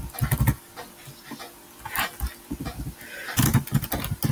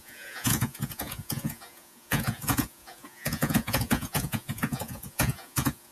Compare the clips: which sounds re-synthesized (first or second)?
second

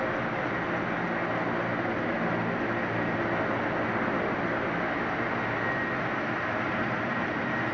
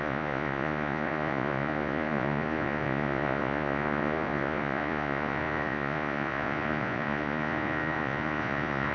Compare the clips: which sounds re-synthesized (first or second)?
second